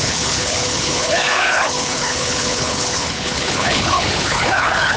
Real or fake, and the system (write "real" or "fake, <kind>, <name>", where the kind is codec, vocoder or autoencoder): fake, codec, HILCodec